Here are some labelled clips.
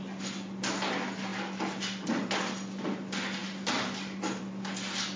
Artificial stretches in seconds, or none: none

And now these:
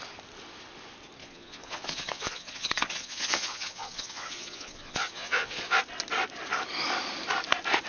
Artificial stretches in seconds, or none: 1.2-5.8 (vocoder, Vocos)